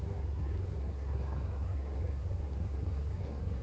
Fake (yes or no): yes